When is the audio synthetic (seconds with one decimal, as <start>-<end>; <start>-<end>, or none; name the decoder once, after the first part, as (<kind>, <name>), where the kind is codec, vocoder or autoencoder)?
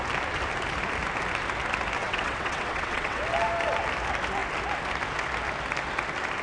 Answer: 2.0-3.2 (vocoder, WaveNeXt)